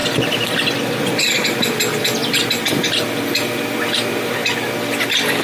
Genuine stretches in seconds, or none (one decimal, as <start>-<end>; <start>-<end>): 0.0-5.4